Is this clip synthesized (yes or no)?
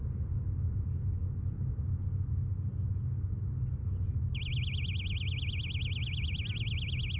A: no